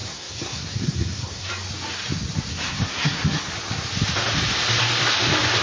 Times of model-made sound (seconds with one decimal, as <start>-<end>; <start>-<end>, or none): 0.0-1.5; 2.5-3.5